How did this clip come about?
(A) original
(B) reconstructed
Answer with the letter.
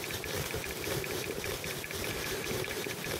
A